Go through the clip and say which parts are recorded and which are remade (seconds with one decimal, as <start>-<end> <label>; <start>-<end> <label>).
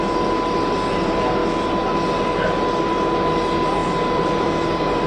0.0-3.8 recorded; 3.8-5.1 remade